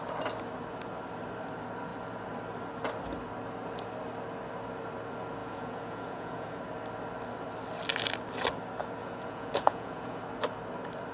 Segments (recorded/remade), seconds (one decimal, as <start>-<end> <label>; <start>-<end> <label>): 0.0-5.4 recorded; 5.4-6.6 remade; 6.6-9.0 recorded; 9.0-10.2 remade; 10.2-11.1 recorded